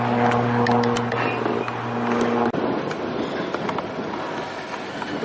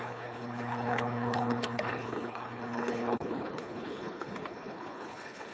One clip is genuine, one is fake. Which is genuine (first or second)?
first